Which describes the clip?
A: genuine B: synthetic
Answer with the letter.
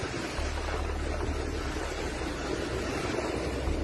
A